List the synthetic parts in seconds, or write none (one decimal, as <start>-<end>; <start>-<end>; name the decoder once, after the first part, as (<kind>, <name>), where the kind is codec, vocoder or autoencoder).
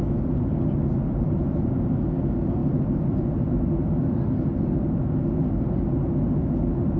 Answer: 1.0-2.0 (vocoder, BigVGAN v2)